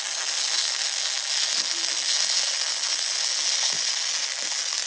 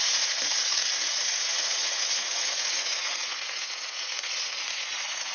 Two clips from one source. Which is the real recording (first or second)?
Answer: first